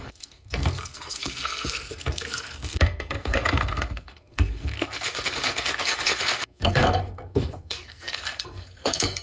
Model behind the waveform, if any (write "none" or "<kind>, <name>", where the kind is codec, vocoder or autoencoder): codec, SNAC